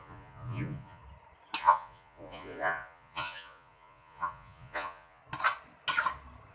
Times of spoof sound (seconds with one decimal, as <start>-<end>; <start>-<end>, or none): 0.0-1.0; 1.6-5.2